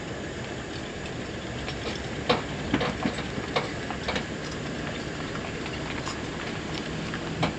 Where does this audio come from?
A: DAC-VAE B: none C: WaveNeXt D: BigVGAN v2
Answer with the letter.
B